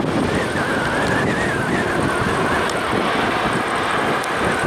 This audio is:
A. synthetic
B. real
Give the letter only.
B